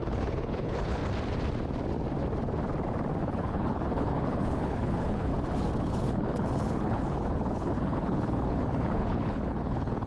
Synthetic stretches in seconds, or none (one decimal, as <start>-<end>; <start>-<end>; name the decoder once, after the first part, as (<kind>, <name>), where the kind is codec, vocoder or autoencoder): 0.0-1.0 (codec, HILCodec); 3.2-5.3; 5.8-10.1